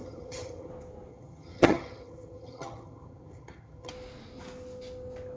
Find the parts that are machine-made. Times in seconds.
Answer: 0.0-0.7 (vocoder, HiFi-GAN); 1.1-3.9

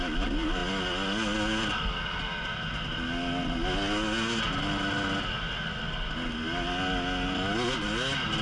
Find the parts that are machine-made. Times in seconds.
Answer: none

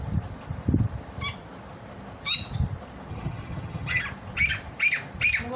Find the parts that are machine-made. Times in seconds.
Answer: 3.1-4.0 (vocoder, HiFi-GAN)

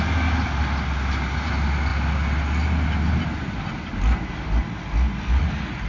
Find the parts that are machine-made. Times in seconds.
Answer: none